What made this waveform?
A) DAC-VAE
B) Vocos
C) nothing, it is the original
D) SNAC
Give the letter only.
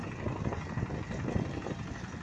C